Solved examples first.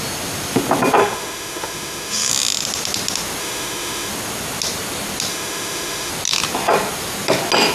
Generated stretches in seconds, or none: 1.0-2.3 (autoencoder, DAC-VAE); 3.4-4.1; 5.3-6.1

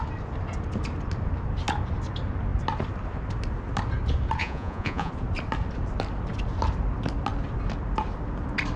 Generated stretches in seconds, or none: 4.4-5.1 (vocoder, Vocos)

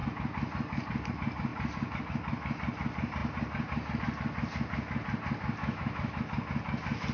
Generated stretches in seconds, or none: 5.6-6.2 (autoencoder, DAC-VAE)